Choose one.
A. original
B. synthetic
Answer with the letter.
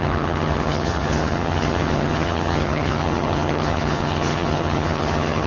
B